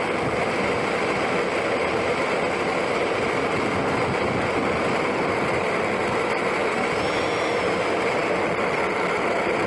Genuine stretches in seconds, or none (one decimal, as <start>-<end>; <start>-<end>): 0.0-9.7